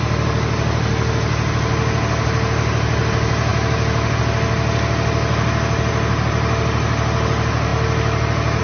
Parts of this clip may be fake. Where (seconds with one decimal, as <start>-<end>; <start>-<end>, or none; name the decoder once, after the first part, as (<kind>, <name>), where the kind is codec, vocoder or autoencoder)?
none